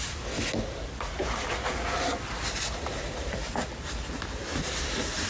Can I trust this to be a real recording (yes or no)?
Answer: yes